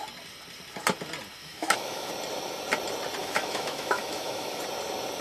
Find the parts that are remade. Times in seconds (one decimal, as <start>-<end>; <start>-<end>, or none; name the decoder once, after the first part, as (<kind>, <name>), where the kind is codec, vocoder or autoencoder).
1.4-2.1 (autoencoder, DAC-VAE); 3.2-4.6